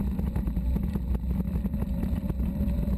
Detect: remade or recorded recorded